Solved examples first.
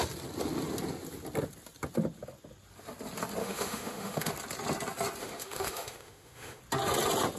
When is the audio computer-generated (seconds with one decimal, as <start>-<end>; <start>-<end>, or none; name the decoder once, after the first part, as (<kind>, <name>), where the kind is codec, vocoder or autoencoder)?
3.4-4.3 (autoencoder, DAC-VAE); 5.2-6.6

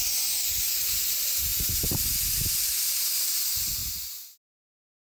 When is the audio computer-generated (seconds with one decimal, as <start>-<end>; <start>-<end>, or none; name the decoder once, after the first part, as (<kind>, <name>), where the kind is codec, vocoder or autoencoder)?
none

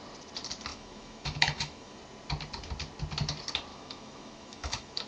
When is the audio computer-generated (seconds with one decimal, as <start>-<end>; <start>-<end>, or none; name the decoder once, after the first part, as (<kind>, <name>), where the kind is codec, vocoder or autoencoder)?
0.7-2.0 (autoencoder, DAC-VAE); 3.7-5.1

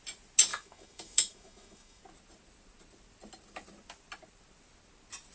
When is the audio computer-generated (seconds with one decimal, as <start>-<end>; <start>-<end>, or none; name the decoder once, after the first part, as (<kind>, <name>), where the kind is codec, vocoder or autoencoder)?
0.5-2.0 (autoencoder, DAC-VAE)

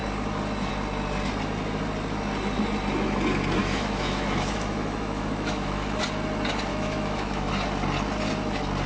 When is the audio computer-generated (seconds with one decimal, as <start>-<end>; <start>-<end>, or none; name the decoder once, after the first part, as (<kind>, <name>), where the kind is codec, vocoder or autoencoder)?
3.6-6.0 (autoencoder, DAC-VAE); 6.7-7.5

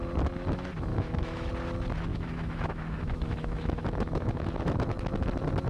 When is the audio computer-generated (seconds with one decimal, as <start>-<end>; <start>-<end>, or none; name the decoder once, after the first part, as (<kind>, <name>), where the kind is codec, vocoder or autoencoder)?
0.9-1.5 (autoencoder, DAC-VAE); 2.1-4.7